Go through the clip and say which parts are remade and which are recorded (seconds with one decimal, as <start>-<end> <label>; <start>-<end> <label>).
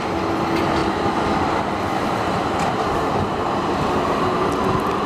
0.0-5.1 recorded